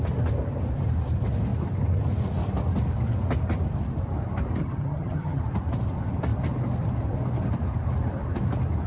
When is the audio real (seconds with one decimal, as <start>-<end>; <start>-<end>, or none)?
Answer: 0.0-4.6; 5.4-8.9